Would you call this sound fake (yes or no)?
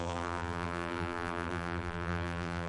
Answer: yes